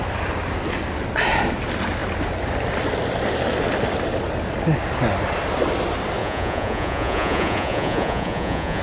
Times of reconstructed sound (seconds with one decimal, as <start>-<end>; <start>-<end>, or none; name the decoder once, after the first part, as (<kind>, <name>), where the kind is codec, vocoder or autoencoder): 6.2-8.8 (vocoder, Vocos)